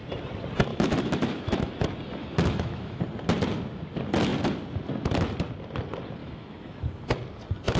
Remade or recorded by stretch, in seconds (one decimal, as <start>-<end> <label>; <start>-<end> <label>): 0.0-0.7 recorded; 0.7-1.7 remade; 1.7-2.2 recorded; 2.2-3.0 remade; 3.0-6.2 recorded; 6.2-6.8 remade; 6.8-7.8 recorded